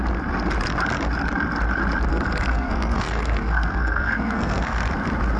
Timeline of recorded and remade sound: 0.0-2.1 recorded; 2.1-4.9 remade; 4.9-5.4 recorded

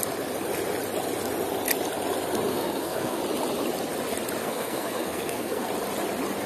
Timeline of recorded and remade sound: 0.0-2.5 recorded; 2.5-3.2 remade; 3.2-4.4 recorded; 4.4-5.7 remade; 5.7-6.5 recorded

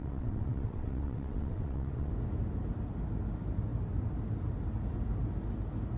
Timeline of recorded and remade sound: 0.0-2.1 remade; 2.1-6.0 recorded

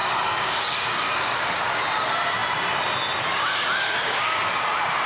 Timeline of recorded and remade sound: 0.0-1.7 remade; 1.7-3.3 recorded; 3.3-4.5 remade; 4.5-5.1 recorded

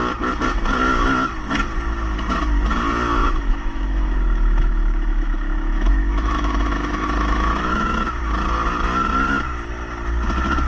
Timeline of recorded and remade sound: 0.0-3.2 recorded; 3.2-8.2 remade; 8.2-10.7 recorded

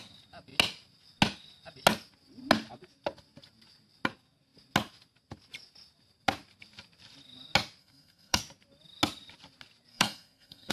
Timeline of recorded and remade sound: 0.0-7.8 recorded; 7.8-8.4 remade; 8.4-9.9 recorded; 9.9-10.7 remade

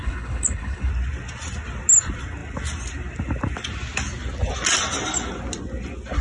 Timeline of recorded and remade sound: 0.0-0.9 remade; 0.9-6.2 recorded